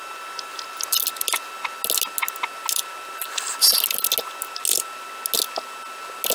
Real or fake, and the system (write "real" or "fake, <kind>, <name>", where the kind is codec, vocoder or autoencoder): real